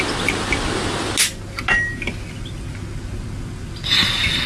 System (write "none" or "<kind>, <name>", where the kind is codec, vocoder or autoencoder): none